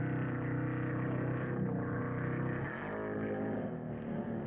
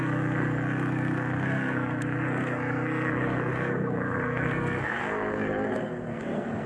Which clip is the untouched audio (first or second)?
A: first